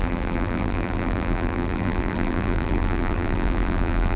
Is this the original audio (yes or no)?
no